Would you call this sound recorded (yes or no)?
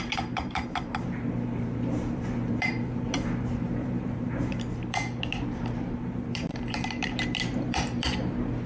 no